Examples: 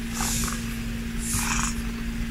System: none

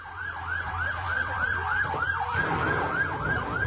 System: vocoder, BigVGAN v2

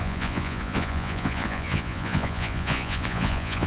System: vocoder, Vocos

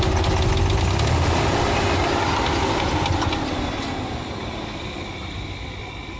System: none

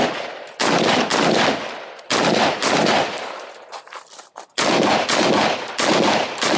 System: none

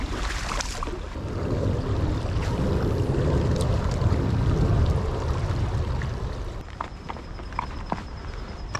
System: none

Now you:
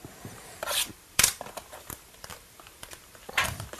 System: vocoder, BigVGAN v2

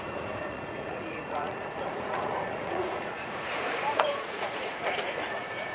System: vocoder, Vocos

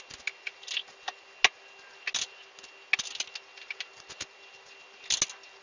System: none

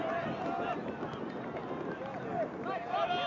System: none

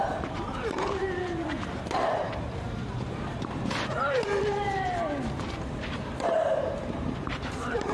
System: vocoder, BigVGAN v2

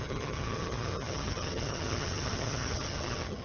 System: vocoder, HiFi-GAN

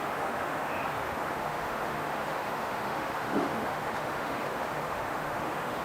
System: autoencoder, DAC-VAE